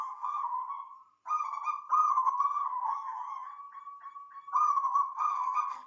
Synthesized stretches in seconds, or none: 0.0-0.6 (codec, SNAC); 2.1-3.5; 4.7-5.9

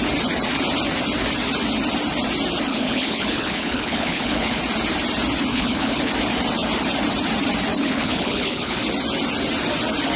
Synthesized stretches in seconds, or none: 2.7-4.6 (codec, HILCodec); 5.5-6.1; 7.8-8.8

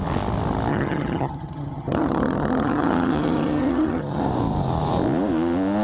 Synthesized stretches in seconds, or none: 0.7-4.2 (vocoder, HiFi-GAN)

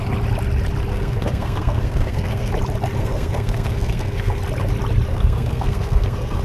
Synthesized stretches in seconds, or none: 0.9-2.5 (codec, SNAC); 3.0-4.4; 5.1-6.4

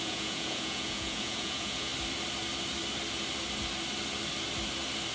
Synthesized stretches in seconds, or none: 0.0-1.9 (vocoder, Vocos)